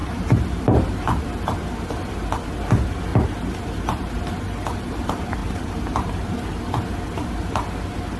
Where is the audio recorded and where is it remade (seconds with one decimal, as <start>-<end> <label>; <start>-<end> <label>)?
0.0-1.2 remade; 1.2-5.4 recorded; 5.4-6.6 remade; 6.6-8.2 recorded